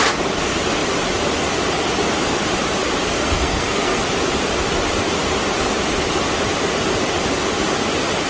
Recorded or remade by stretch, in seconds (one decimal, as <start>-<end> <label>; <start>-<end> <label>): 0.0-3.2 recorded; 3.2-4.0 remade; 4.0-8.3 recorded